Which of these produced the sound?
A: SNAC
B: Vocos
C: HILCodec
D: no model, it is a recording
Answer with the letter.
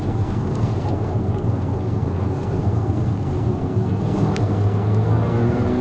A